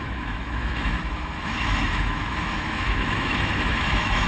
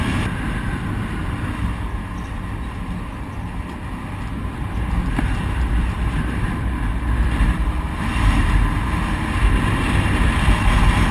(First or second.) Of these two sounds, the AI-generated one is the first